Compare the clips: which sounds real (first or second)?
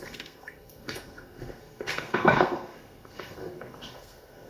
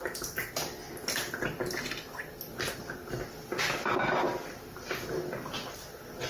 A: second